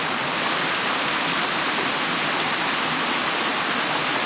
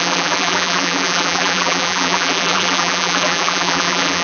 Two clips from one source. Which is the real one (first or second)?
first